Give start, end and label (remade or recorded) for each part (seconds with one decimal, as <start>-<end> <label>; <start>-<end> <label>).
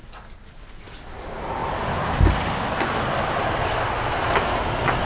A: 0.0-5.1 recorded